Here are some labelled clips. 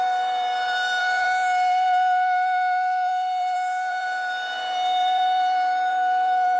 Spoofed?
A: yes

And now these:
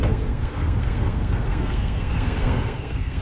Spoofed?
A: yes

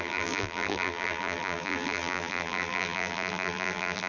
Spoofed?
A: yes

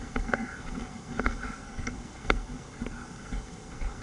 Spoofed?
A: yes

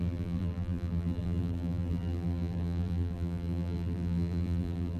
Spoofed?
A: yes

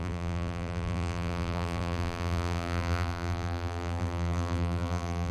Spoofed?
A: yes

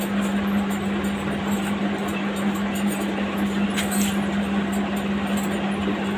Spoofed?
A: no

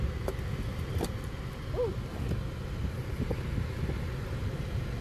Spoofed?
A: no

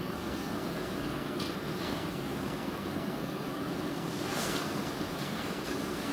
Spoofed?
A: yes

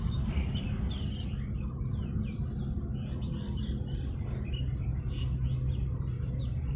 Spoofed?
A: no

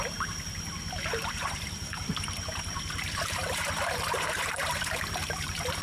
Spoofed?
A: yes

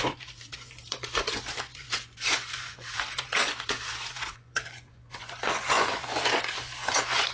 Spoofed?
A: yes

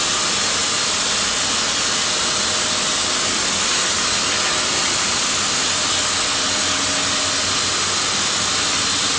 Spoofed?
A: no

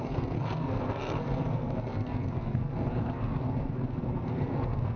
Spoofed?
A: yes